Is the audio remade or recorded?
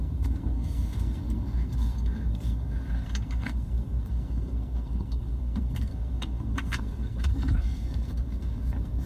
remade